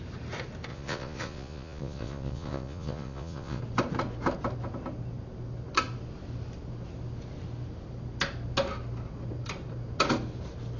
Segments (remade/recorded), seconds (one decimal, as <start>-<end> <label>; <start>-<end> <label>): 0.0-0.7 recorded; 0.7-3.6 remade; 3.6-10.8 recorded